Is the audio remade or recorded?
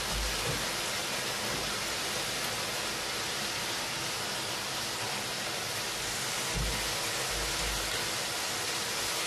recorded